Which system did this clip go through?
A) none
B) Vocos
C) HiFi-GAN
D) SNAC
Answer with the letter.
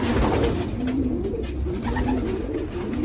A